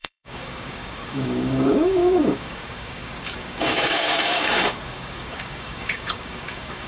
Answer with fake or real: fake